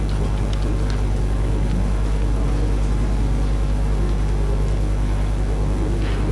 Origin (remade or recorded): recorded